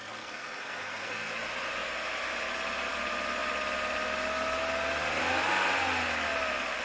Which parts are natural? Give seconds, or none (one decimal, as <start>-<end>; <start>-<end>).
1.3-6.8